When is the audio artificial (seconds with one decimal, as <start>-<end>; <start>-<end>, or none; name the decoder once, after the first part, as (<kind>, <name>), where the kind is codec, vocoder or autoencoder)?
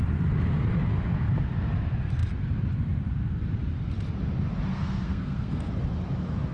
4.7-5.7 (codec, SNAC)